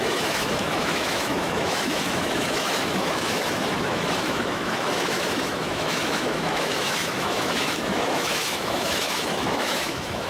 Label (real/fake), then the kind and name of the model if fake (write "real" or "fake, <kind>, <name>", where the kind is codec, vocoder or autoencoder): fake, autoencoder, DAC-VAE